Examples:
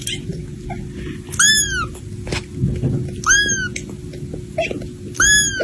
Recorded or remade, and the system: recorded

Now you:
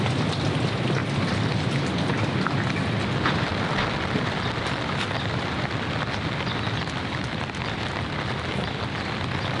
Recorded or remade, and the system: recorded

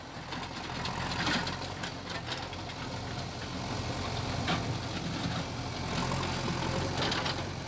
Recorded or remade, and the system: recorded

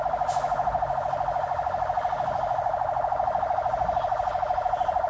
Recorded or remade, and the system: recorded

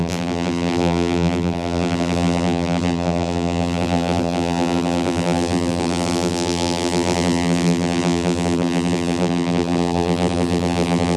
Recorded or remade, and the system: remade, vocoder, BigVGAN v2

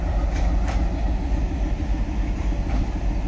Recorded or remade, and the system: recorded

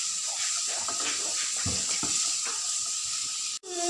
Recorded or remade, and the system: remade, vocoder, BigVGAN v2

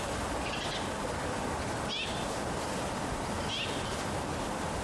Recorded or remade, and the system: recorded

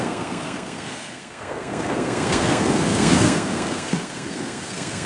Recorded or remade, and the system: remade, codec, SNAC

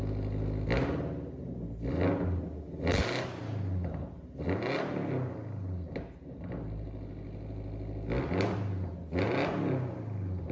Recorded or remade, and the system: recorded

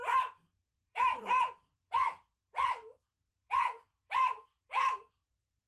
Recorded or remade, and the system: remade, vocoder, Vocos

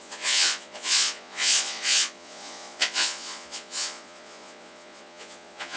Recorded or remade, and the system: remade, vocoder, Vocos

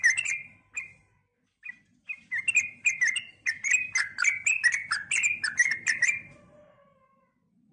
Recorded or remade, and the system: recorded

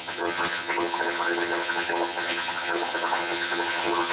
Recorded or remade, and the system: remade, vocoder, HiFi-GAN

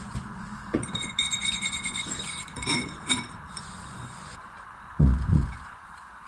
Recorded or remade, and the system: remade, vocoder, Vocos